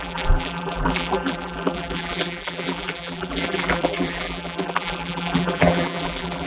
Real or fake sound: fake